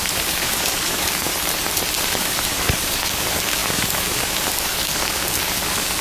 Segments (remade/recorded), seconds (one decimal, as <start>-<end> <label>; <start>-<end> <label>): 0.0-1.3 remade; 1.3-2.0 recorded; 2.0-6.0 remade